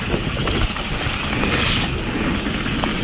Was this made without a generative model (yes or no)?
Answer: yes